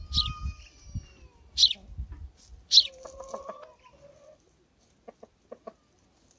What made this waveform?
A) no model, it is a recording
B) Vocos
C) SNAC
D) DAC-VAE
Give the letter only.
A